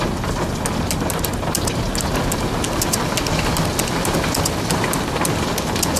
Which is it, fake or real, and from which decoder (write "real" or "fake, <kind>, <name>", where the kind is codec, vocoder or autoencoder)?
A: real